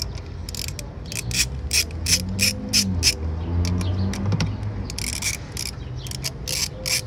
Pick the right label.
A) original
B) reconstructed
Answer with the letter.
A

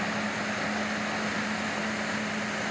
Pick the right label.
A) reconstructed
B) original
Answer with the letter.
B